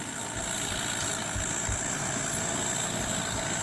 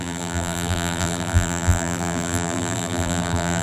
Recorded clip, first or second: first